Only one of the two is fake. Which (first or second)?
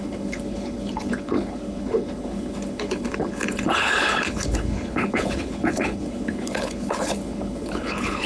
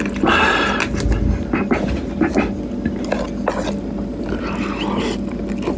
first